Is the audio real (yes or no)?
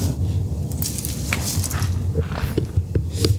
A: yes